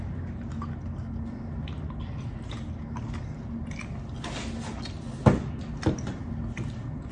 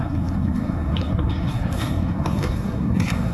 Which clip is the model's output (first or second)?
second